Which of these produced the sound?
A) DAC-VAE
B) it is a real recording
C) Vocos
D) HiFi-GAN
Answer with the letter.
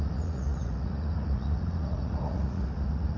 C